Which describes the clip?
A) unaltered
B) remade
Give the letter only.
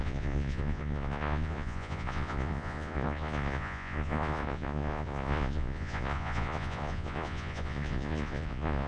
B